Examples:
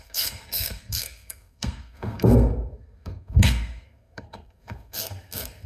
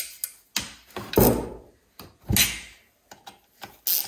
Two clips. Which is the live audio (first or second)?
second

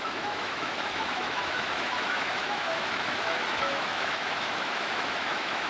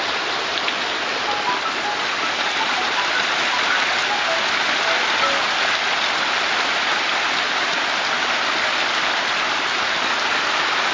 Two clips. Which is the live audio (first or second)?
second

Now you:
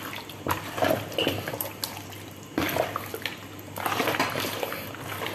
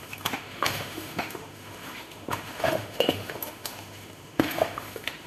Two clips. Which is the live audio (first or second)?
first